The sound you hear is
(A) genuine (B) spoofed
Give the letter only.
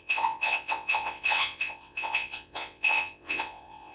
B